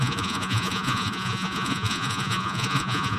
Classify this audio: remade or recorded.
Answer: remade